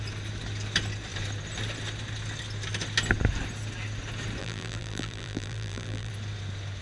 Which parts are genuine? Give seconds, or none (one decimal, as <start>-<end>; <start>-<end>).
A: 0.0-4.4; 6.1-6.8